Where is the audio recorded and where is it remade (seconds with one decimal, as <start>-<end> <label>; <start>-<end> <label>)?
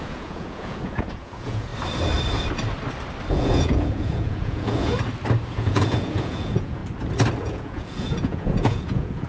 0.0-1.7 remade; 1.7-3.3 recorded; 3.3-4.9 remade; 4.9-5.5 recorded; 5.5-6.8 remade; 6.8-7.4 recorded; 7.4-9.3 remade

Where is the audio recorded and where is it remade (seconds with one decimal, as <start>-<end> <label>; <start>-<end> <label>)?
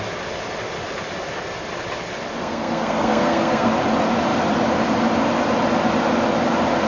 0.0-2.4 recorded; 2.4-3.7 remade; 3.7-6.9 recorded